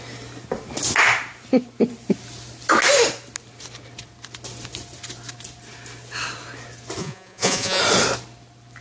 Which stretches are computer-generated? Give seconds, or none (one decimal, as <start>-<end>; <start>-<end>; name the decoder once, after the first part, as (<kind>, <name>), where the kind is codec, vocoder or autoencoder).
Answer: 7.0-7.8 (vocoder, Vocos)